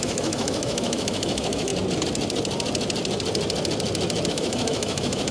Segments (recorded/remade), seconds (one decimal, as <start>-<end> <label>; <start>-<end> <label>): 0.0-1.7 remade; 1.7-4.3 recorded; 4.3-5.3 remade